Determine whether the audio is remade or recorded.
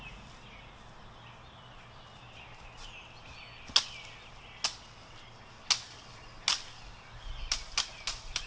recorded